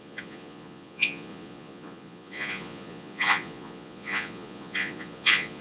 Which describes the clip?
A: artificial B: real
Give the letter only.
A